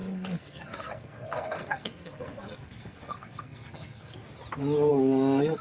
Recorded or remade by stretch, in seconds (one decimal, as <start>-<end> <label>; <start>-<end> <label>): 0.0-4.2 remade; 4.2-4.9 recorded; 4.9-5.6 remade